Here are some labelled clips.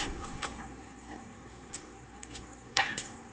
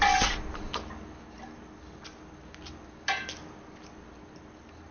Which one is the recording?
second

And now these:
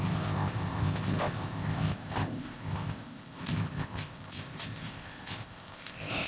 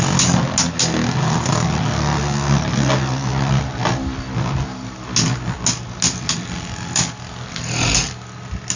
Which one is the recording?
second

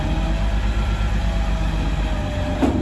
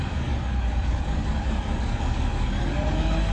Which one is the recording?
first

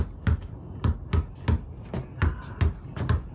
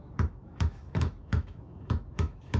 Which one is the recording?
first